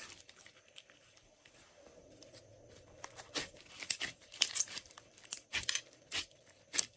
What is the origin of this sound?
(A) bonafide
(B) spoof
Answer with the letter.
B